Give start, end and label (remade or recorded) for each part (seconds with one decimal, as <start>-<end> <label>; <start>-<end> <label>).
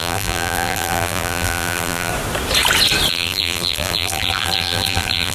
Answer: 0.0-2.1 remade; 2.1-3.1 recorded; 3.1-5.3 remade